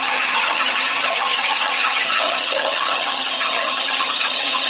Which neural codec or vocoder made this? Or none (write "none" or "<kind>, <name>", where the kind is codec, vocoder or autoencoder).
vocoder, HiFi-GAN